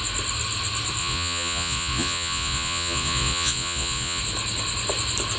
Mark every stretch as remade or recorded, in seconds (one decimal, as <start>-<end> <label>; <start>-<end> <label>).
0.0-1.0 recorded; 1.0-4.2 remade; 4.2-5.4 recorded

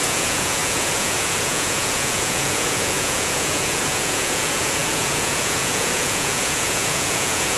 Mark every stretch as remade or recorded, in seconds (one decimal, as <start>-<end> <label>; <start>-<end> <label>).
0.0-7.6 remade

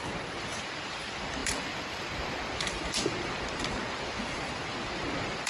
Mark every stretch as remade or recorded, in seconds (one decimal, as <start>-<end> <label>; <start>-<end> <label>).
0.0-5.5 recorded

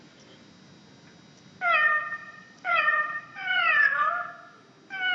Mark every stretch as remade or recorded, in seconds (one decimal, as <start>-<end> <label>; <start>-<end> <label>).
0.0-2.2 recorded; 2.2-4.1 remade; 4.1-5.1 recorded

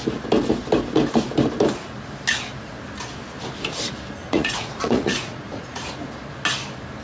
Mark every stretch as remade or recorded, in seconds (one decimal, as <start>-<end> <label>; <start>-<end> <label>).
0.0-4.2 recorded; 4.2-5.9 remade; 5.9-7.0 recorded

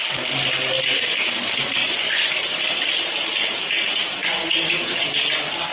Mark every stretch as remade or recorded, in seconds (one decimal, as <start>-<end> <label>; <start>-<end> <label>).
0.0-1.8 recorded; 1.8-2.3 remade; 2.3-4.2 recorded; 4.2-5.0 remade; 5.0-5.7 recorded